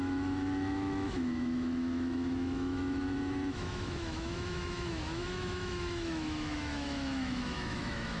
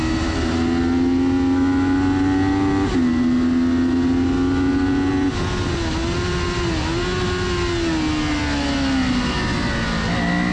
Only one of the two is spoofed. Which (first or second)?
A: first